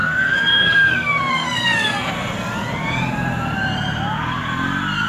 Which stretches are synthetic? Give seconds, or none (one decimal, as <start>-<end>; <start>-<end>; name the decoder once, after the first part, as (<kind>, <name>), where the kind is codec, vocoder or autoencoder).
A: 0.0-2.1 (codec, SNAC)